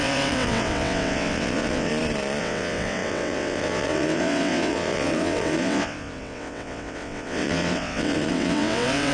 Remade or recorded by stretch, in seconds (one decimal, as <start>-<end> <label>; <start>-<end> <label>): 0.0-1.9 remade; 1.9-2.4 recorded; 2.4-9.1 remade

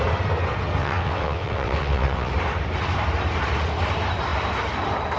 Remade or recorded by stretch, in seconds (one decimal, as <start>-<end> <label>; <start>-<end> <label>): 0.0-0.8 recorded; 0.8-2.3 remade; 2.3-5.2 recorded

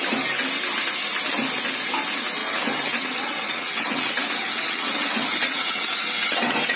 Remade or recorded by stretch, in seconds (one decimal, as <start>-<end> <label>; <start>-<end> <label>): 0.0-2.4 recorded; 2.4-6.8 remade

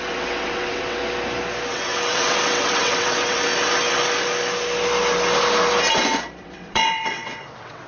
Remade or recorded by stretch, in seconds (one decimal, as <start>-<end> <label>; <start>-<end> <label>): 0.0-1.0 remade; 1.0-1.7 recorded; 1.7-3.5 remade; 3.5-6.4 recorded; 6.4-7.9 remade

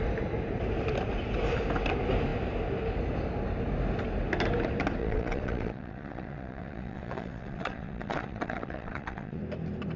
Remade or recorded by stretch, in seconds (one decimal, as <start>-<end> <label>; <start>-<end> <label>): 0.0-5.0 recorded; 5.0-9.4 remade; 9.4-10.0 recorded

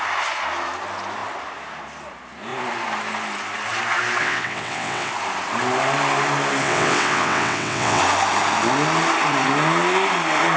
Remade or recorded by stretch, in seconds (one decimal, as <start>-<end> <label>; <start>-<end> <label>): 0.0-4.2 recorded; 4.2-5.1 remade; 5.1-6.6 recorded; 6.6-8.0 remade; 8.0-10.6 recorded